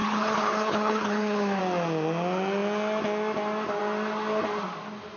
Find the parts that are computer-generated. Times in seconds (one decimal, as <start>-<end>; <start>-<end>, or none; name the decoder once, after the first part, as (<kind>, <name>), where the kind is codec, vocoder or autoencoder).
0.0-1.6 (codec, HILCodec)